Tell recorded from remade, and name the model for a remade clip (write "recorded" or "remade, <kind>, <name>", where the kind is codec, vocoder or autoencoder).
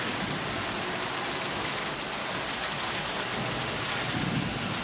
recorded